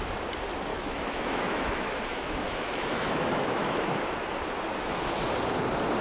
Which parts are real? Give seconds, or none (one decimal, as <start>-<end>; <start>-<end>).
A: 0.0-0.7; 4.0-4.7; 5.2-6.0